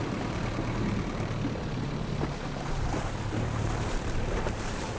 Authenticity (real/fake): fake